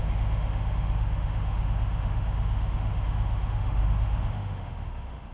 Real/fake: fake